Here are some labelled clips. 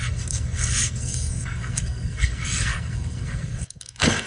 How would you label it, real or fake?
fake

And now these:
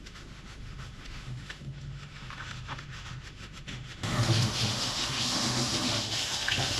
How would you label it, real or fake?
fake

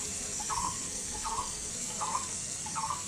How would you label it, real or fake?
fake